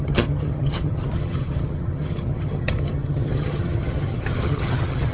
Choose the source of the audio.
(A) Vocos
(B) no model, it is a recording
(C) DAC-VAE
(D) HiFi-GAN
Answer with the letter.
D